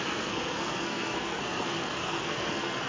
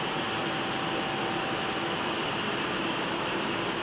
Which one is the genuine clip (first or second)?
second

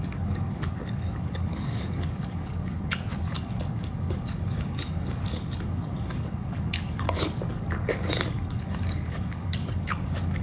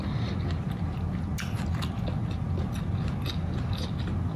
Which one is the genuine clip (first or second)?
second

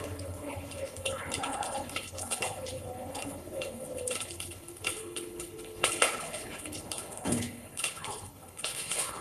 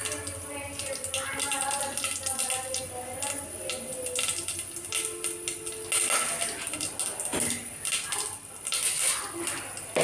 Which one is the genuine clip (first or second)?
second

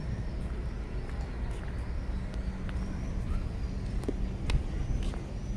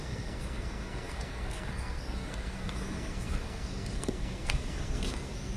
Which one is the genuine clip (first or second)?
first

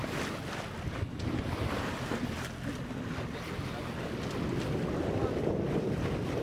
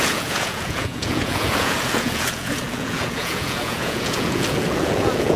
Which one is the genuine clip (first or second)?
first